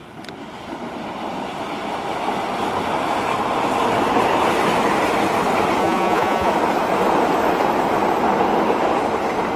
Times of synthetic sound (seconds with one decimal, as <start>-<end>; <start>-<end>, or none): 5.8-6.5